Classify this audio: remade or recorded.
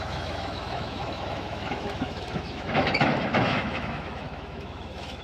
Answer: remade